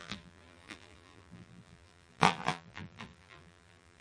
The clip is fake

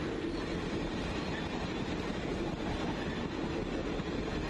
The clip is real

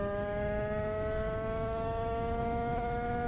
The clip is fake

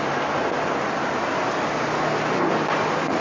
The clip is real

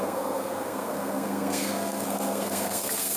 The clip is fake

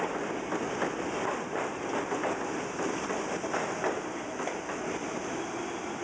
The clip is real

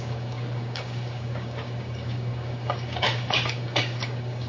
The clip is fake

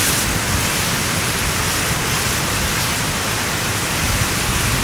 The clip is real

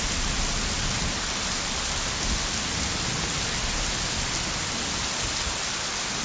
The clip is real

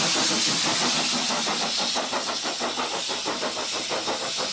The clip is real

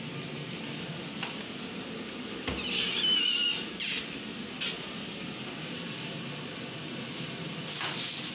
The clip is real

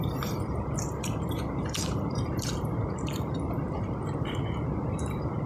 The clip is fake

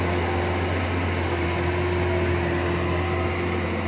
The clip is real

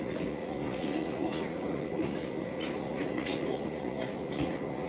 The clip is fake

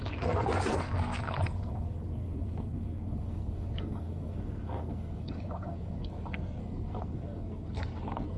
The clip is fake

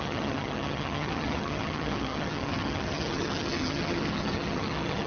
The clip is fake